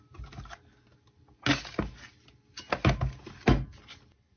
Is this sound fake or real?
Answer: real